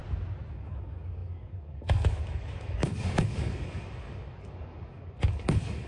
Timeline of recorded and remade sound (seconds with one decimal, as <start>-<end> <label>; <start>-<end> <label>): 0.0-0.5 recorded; 0.5-5.9 remade

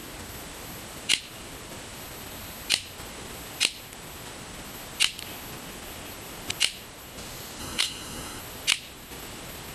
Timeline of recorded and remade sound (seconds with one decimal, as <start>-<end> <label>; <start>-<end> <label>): 0.0-7.6 recorded; 7.6-8.4 remade; 8.4-9.7 recorded

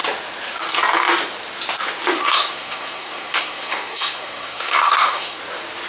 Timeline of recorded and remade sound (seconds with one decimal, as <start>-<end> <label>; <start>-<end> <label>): 0.0-2.1 recorded; 2.1-5.4 remade; 5.4-5.9 recorded